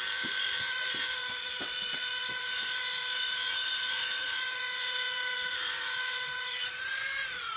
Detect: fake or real fake